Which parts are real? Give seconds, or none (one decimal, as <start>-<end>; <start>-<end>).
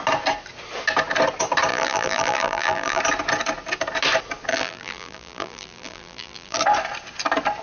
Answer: 0.0-1.7; 3.0-4.5; 6.6-7.6